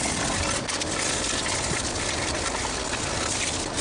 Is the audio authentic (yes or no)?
yes